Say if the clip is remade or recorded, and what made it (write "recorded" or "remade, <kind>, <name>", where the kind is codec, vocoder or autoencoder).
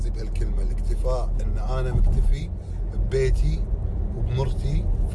recorded